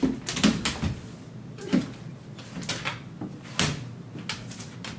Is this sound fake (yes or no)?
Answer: no